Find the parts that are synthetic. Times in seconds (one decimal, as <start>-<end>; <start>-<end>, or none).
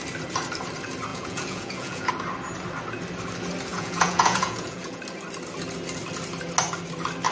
1.1-2.1; 3.7-5.0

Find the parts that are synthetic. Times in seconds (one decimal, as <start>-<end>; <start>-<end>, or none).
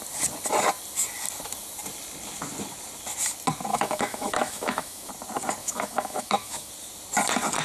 3.7-5.1; 5.6-6.7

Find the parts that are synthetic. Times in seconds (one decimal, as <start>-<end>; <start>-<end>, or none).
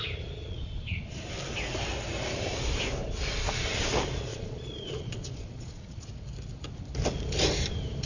0.4-1.2; 4.3-6.1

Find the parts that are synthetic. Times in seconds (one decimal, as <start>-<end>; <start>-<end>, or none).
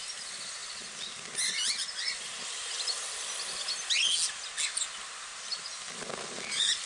none